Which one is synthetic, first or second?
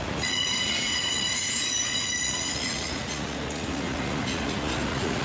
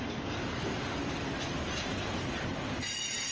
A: first